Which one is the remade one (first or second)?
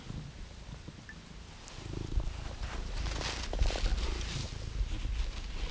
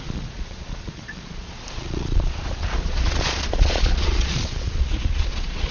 second